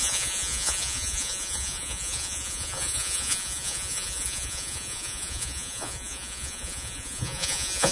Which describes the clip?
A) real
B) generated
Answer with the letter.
B